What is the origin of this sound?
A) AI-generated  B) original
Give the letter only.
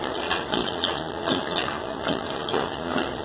A